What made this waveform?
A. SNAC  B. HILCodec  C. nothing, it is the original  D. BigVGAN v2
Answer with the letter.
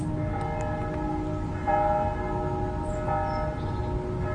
C